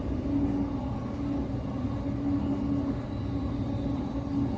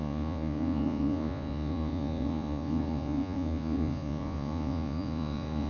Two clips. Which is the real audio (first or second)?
first